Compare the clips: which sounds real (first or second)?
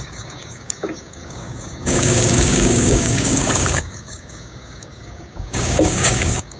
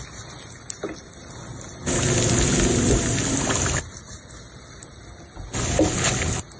second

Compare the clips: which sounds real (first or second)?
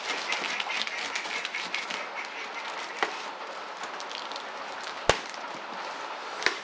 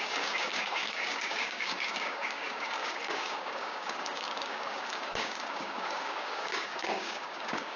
first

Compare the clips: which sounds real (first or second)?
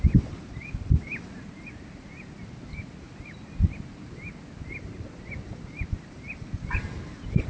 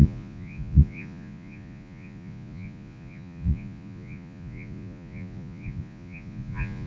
first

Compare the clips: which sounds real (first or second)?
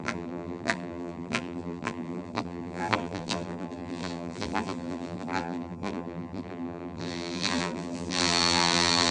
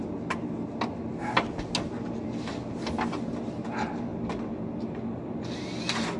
second